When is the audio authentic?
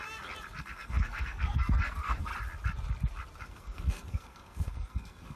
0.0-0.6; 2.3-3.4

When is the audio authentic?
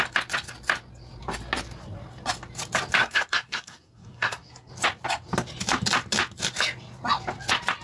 0.0-3.0; 4.7-7.8